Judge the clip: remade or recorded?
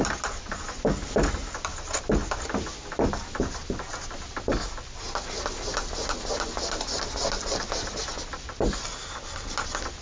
recorded